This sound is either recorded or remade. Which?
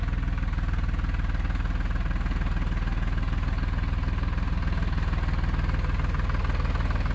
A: recorded